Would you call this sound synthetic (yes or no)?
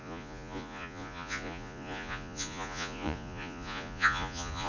yes